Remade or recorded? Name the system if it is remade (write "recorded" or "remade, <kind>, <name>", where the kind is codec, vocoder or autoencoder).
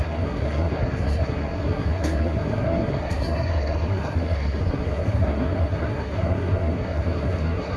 remade, codec, SNAC